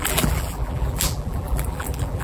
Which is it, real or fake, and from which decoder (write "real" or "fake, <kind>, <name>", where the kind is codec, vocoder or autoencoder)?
fake, vocoder, BigVGAN v2